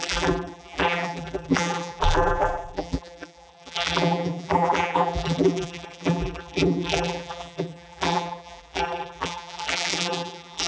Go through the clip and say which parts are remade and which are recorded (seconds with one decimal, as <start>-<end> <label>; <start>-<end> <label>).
0.0-10.7 remade